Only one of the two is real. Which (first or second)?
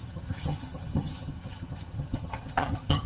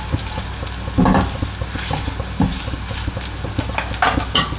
second